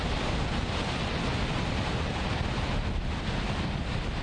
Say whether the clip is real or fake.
real